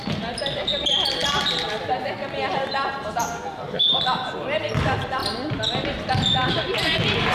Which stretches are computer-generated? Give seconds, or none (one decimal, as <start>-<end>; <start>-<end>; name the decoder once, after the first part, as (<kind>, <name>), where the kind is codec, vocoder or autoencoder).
none